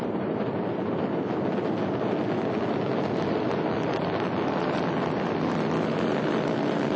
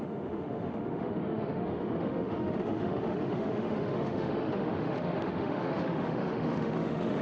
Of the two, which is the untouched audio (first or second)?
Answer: first